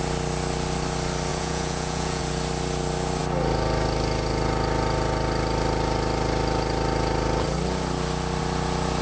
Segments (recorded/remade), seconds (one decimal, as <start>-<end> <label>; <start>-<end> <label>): 0.0-1.3 recorded; 1.3-2.2 remade; 2.2-9.0 recorded